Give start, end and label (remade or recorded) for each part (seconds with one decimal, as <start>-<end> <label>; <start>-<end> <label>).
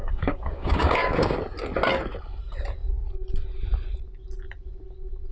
0.0-1.4 remade; 1.4-5.3 recorded